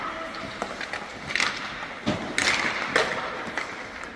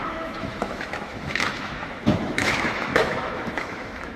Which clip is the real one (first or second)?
first